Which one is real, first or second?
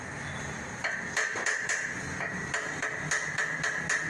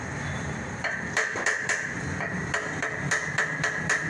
first